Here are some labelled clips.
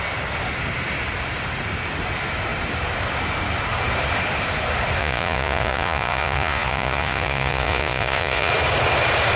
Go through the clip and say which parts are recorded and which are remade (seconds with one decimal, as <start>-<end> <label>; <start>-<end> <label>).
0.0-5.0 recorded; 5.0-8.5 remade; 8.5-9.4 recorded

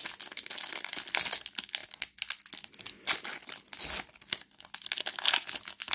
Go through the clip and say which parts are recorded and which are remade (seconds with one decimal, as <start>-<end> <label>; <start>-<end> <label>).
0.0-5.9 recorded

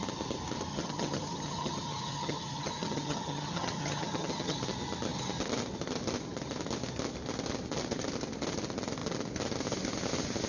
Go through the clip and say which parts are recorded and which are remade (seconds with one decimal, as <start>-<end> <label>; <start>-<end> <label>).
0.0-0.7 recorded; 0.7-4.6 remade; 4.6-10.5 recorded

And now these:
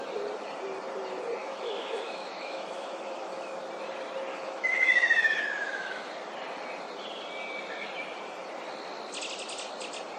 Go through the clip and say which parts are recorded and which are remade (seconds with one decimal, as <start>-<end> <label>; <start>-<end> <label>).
0.0-1.4 recorded; 1.4-3.6 remade; 3.6-4.3 recorded; 4.3-6.1 remade; 6.1-10.2 recorded

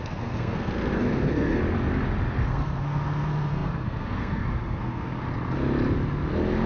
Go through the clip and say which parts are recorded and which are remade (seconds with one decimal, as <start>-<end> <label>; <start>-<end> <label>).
0.0-1.6 remade; 1.6-2.4 recorded; 2.4-5.1 remade; 5.1-6.7 recorded

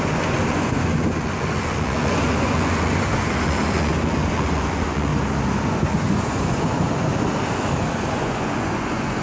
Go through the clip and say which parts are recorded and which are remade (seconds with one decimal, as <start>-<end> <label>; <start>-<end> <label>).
0.0-5.1 remade; 5.1-5.6 recorded; 5.6-7.1 remade; 7.1-7.8 recorded; 7.8-9.2 remade

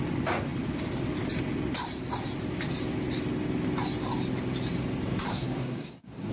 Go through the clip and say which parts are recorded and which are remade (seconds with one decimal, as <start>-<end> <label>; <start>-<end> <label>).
0.0-5.3 recorded; 5.3-6.3 remade

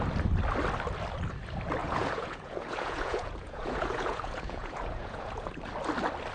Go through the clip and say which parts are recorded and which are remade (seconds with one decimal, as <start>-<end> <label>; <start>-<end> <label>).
0.0-1.8 recorded; 1.8-5.5 remade; 5.5-6.3 recorded